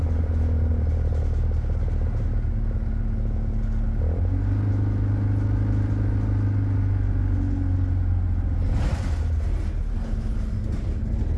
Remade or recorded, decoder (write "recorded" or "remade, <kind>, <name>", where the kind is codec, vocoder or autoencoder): recorded